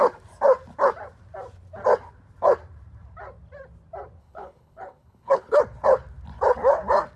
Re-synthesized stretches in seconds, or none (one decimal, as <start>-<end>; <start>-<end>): 4.2-5.6